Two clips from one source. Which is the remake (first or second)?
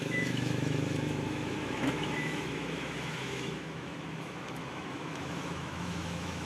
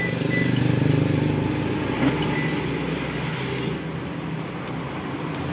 first